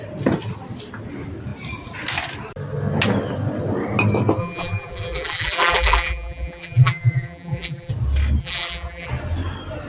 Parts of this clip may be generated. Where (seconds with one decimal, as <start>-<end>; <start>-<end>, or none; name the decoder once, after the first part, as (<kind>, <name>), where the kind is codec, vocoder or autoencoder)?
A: 4.4-7.9 (vocoder, BigVGAN v2); 8.4-9.1